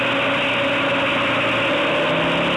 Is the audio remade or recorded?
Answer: recorded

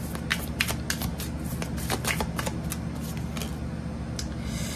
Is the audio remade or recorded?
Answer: recorded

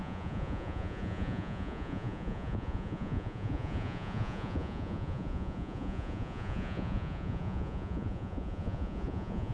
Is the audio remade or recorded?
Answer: remade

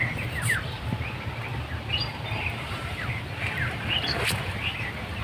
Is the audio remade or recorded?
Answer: remade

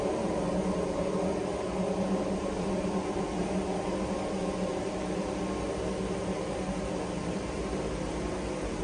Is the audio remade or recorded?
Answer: remade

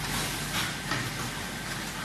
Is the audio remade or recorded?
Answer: recorded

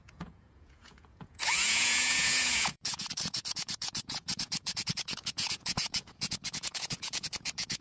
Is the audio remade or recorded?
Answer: remade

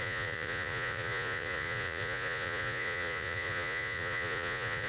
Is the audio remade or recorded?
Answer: remade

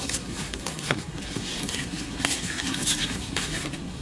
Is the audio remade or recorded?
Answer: remade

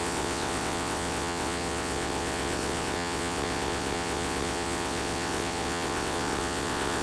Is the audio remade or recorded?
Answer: remade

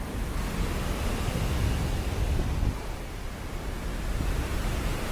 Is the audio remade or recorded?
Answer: remade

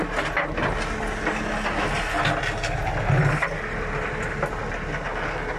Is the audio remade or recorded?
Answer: recorded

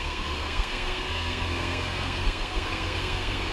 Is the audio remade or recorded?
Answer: remade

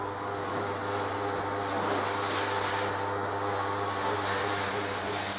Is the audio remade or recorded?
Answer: recorded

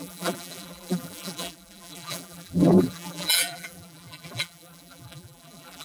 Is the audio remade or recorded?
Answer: remade